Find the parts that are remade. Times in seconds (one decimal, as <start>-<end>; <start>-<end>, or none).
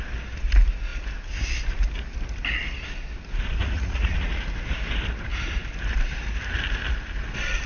3.6-4.3